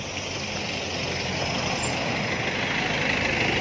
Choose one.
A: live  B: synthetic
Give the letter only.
A